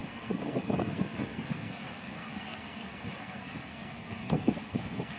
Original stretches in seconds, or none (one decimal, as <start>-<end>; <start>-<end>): none